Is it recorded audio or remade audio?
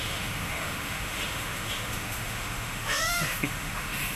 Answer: remade